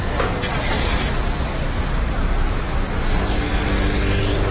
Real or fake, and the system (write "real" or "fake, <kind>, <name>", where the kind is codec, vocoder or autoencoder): real